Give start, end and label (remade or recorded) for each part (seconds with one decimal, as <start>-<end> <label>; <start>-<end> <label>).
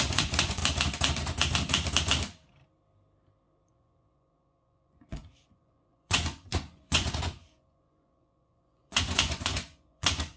0.0-0.6 remade; 0.6-3.7 recorded; 3.7-10.4 remade